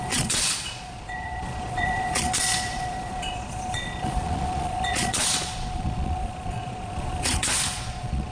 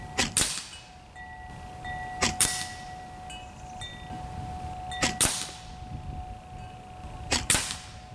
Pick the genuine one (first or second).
second